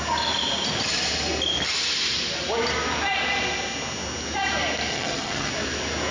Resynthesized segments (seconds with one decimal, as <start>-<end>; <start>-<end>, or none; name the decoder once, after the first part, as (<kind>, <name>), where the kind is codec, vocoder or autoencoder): 4.9-5.5 (vocoder, HiFi-GAN)